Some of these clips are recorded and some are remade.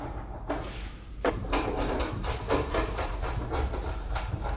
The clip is remade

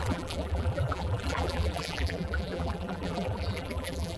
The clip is remade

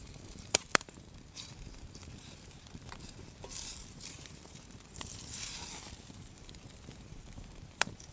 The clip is remade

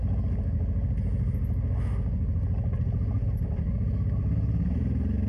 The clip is recorded